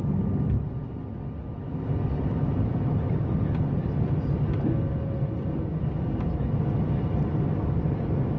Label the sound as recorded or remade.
recorded